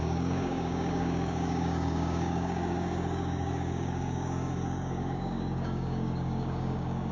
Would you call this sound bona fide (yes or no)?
no